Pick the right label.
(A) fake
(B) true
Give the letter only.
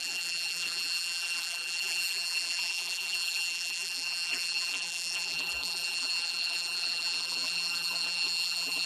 A